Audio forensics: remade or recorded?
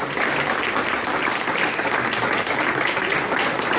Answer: recorded